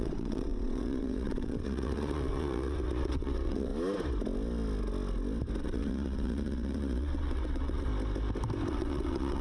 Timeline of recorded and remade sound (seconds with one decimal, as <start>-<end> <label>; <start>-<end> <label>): 0.0-3.7 remade; 3.7-5.6 recorded; 5.6-7.9 remade; 7.9-8.7 recorded; 8.7-9.4 remade